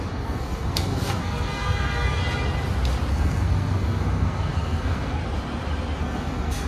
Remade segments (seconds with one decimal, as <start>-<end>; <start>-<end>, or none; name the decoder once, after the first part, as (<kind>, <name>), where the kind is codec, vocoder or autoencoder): 0.0-2.2 (codec, SNAC); 3.1-5.2; 6.0-6.7